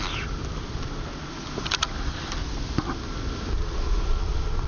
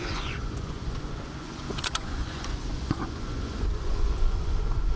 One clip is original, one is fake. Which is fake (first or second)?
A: second